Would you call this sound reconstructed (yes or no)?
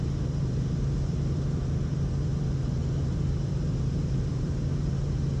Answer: yes